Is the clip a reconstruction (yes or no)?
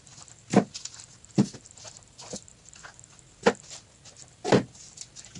no